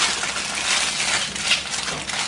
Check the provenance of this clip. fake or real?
real